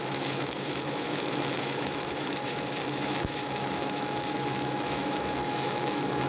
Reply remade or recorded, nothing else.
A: remade